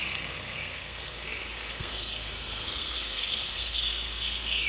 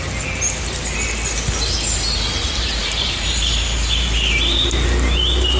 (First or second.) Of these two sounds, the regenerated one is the first